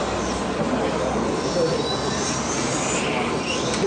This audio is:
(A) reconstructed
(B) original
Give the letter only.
B